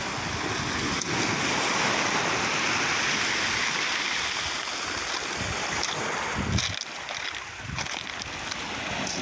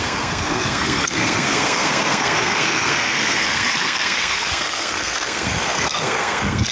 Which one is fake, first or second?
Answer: second